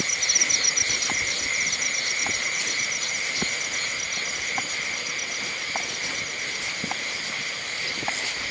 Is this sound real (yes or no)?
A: yes